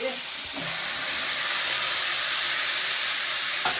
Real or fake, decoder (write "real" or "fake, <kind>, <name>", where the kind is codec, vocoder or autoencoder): real